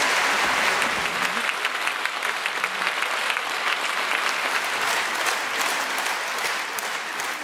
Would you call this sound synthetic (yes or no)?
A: no